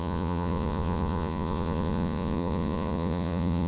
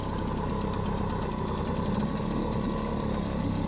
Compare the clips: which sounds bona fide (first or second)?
second